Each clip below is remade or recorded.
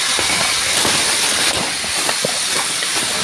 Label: recorded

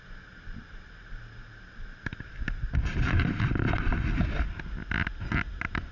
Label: recorded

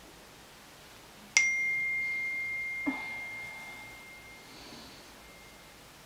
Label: recorded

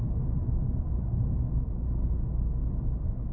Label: recorded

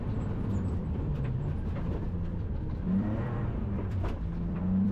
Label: remade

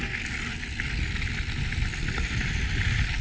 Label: recorded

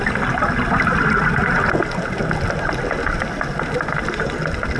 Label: recorded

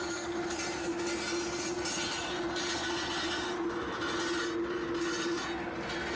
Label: recorded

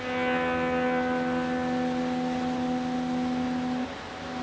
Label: recorded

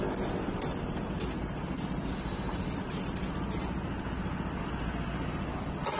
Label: recorded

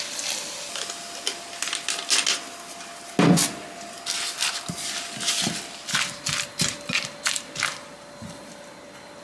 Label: recorded